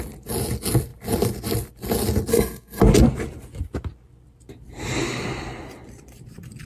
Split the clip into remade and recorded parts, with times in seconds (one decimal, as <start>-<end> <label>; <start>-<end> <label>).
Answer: 0.0-2.3 recorded; 2.3-2.8 remade; 2.8-6.6 recorded